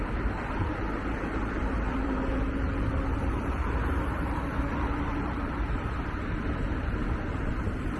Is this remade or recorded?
remade